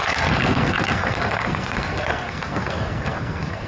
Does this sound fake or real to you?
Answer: fake